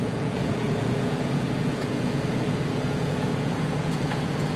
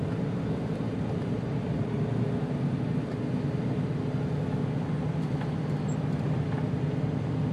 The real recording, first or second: second